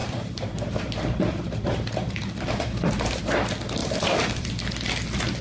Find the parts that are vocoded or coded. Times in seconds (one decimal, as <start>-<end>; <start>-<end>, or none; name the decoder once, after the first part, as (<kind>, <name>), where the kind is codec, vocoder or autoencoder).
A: 0.0-3.2 (vocoder, BigVGAN v2); 3.8-4.5